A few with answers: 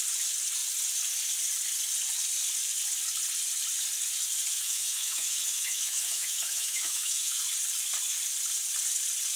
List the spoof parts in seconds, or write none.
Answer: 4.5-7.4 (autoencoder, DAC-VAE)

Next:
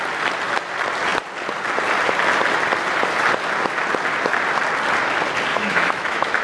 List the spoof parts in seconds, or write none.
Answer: 5.5-6.4 (autoencoder, DAC-VAE)

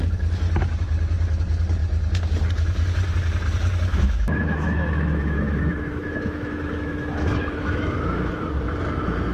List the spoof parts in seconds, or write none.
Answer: 3.9-8.3 (autoencoder, DAC-VAE)

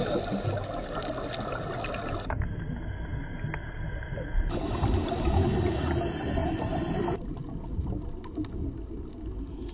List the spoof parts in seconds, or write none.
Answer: none

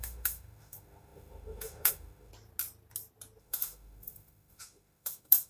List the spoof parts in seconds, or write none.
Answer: 0.0-2.3 (autoencoder, DAC-VAE); 3.4-5.5

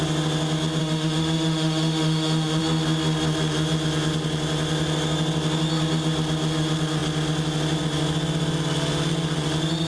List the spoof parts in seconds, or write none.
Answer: 0.8-2.6 (autoencoder, DAC-VAE)

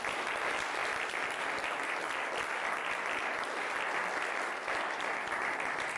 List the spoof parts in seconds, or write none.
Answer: none

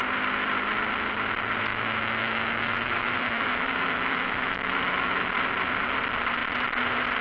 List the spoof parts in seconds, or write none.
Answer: 1.7-5.3 (autoencoder, DAC-VAE)